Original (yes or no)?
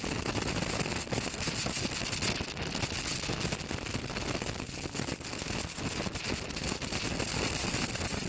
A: yes